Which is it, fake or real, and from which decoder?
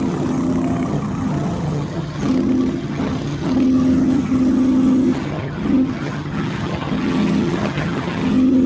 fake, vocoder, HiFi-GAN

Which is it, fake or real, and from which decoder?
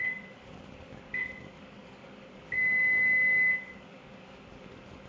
fake, codec, DAC